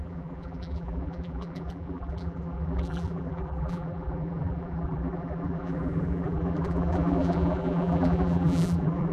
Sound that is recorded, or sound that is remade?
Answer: remade